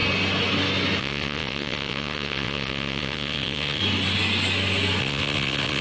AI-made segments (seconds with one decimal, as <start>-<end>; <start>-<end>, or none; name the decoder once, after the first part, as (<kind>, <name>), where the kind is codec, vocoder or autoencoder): 1.0-3.8 (vocoder, WaveNeXt); 5.0-5.8